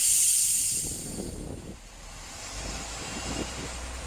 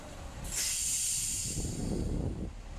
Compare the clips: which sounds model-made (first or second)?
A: first